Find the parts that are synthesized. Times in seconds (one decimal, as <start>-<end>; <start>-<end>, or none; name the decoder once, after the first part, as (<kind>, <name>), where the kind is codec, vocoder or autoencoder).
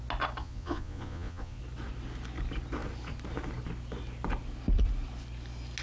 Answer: 0.4-1.6 (vocoder, Vocos)